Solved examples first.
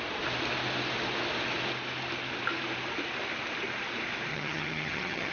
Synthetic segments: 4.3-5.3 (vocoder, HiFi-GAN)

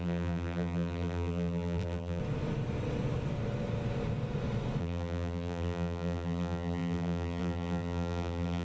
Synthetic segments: 0.0-2.2 (vocoder, BigVGAN v2); 4.8-8.6

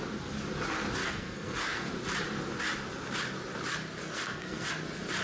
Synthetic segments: 1.0-1.9 (codec, SNAC); 4.0-4.7

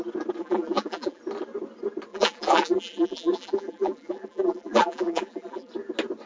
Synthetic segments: 0.4-1.2 (vocoder, BigVGAN v2); 2.1-5.7